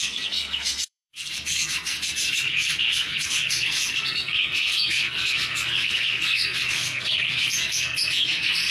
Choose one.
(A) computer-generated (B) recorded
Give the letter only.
A